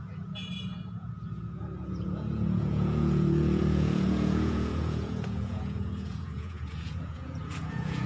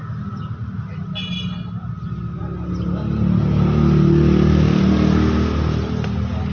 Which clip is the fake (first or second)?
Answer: first